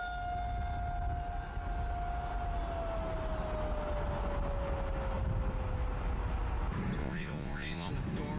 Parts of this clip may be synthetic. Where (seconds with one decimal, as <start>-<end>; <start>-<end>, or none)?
7.0-7.9